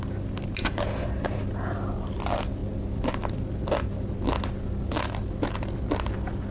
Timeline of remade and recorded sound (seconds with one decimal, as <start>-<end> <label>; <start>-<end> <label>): 0.0-6.5 recorded